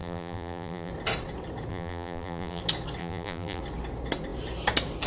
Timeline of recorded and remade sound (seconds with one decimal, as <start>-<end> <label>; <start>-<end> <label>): 0.0-0.9 remade; 0.9-1.7 recorded; 1.7-2.6 remade; 2.6-3.0 recorded; 3.0-3.6 remade; 3.6-5.1 recorded